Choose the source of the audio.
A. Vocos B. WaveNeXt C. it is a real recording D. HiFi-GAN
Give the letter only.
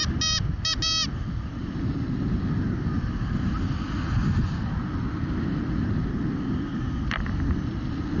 C